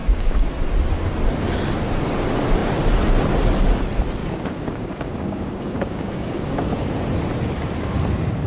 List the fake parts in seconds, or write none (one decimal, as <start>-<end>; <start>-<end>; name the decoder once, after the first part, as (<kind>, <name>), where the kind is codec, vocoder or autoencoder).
0.0-0.5 (codec, DAC); 4.2-6.9